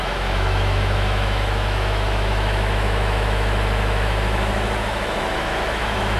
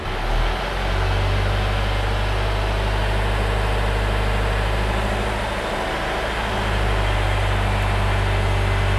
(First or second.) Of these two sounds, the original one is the second